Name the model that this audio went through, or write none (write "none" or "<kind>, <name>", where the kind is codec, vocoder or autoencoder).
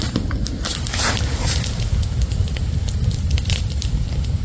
none